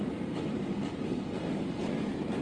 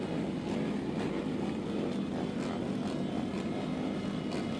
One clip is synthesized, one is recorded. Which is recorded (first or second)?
second